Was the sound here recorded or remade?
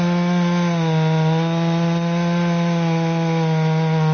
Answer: recorded